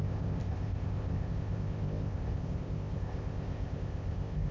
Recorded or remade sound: remade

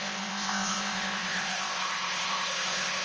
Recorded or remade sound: remade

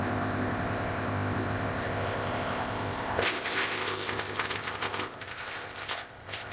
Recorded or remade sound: remade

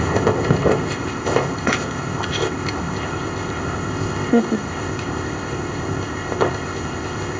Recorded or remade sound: remade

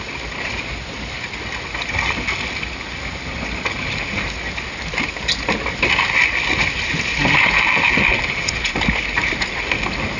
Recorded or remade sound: recorded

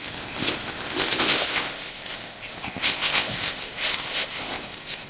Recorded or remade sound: remade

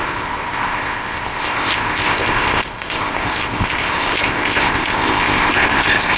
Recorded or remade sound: remade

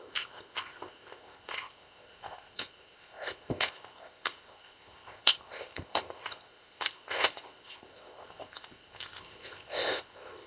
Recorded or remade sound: remade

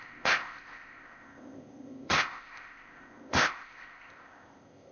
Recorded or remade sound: remade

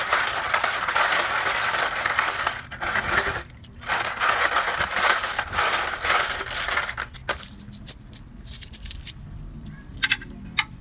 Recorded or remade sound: recorded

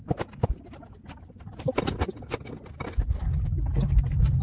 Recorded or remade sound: recorded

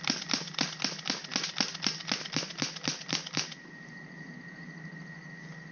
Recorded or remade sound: recorded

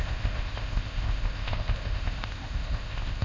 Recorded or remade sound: remade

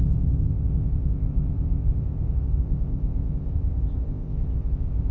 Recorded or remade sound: remade